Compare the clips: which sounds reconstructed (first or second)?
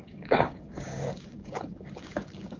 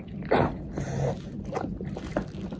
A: first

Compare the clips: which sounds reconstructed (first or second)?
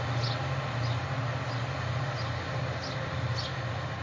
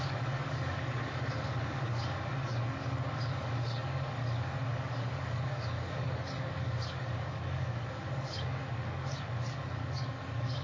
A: second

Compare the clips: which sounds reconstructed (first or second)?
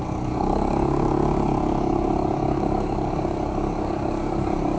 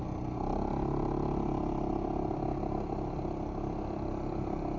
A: first